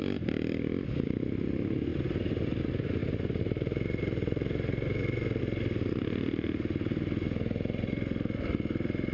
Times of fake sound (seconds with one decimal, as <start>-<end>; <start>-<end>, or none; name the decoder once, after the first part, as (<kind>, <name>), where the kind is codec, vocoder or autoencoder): 3.0-5.4 (vocoder, BigVGAN v2)

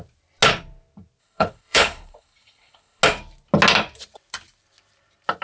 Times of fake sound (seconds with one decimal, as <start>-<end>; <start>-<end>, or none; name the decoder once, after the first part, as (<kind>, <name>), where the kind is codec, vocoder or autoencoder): 1.2-3.0 (codec, HILCodec)

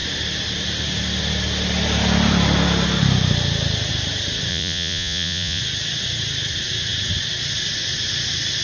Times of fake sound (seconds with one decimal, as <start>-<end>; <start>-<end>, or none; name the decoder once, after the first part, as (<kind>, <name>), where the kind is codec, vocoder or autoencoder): 4.5-5.6 (vocoder, Vocos)

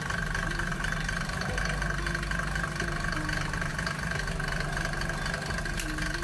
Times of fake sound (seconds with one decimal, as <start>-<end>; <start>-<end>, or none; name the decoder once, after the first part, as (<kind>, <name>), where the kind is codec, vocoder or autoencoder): 0.7-1.6 (vocoder, BigVGAN v2)

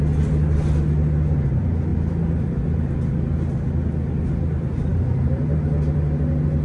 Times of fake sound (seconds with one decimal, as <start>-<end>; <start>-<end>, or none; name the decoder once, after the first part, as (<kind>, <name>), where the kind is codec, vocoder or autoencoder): none